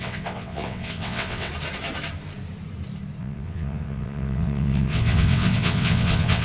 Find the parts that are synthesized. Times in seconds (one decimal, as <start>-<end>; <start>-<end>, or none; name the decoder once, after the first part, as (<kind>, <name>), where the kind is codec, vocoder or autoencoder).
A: 0.0-1.5 (vocoder, WaveNeXt); 3.2-6.4